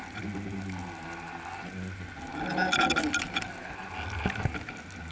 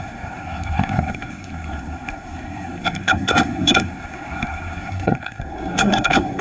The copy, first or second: second